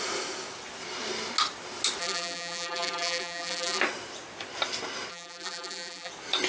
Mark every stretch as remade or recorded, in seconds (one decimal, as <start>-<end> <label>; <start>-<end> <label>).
0.0-2.0 recorded; 2.0-3.8 remade; 3.8-5.1 recorded; 5.1-6.1 remade; 6.1-6.5 recorded